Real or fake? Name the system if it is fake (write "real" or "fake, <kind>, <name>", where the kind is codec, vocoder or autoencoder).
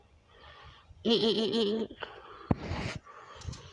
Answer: fake, vocoder, Vocos